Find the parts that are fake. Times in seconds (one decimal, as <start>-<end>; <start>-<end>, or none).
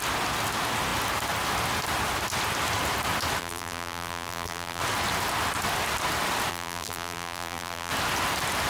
3.4-4.8; 6.5-7.9